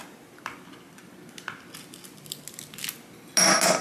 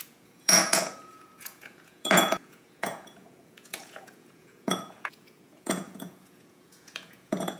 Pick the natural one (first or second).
first